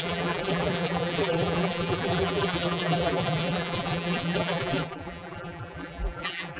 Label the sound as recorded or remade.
remade